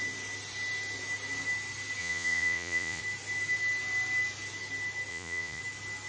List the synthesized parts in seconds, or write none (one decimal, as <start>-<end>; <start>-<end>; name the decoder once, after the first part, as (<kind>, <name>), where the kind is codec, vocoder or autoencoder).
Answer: 2.0-3.0 (vocoder, Vocos); 5.1-5.6